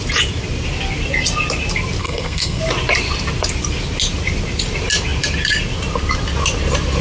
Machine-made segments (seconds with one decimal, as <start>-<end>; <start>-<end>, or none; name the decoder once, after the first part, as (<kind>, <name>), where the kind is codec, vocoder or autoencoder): 2.0-2.6 (codec, SNAC)